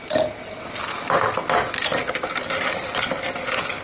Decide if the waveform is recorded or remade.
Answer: recorded